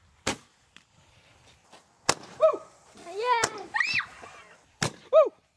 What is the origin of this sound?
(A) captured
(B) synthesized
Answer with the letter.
A